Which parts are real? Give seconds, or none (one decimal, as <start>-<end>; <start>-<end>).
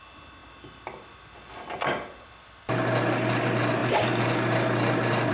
0.0-5.3